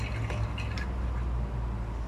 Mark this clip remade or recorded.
recorded